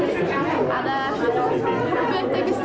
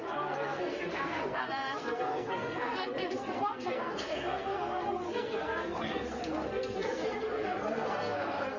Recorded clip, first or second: first